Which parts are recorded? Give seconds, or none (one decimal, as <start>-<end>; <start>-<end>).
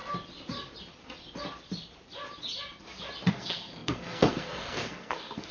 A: 0.0-3.3